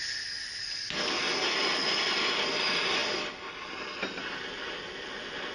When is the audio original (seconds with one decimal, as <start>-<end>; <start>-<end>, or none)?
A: 0.0-5.5